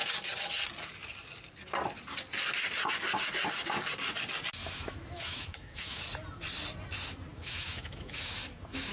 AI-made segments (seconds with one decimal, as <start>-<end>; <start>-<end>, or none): 4.6-6.0; 7.3-8.9